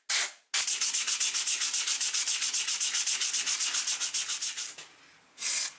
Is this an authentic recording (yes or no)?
yes